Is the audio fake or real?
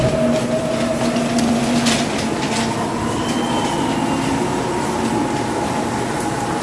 real